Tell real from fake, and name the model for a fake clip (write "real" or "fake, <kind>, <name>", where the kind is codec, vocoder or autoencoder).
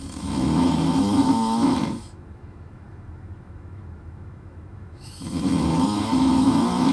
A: fake, autoencoder, DAC-VAE